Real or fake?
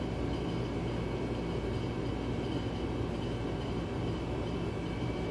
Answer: real